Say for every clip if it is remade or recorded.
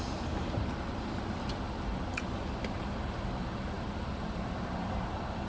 recorded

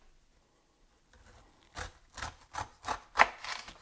recorded